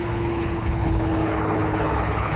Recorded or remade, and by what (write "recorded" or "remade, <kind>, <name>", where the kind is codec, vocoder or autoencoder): remade, codec, HILCodec